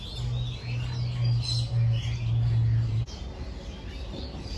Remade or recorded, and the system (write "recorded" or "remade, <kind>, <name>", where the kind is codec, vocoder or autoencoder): recorded